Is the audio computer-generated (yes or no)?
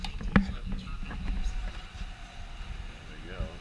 no